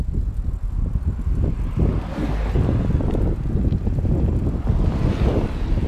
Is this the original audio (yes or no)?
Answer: yes